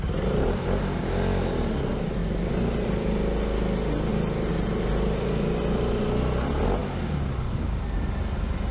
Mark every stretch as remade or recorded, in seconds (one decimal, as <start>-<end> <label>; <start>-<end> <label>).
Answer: 0.0-8.7 recorded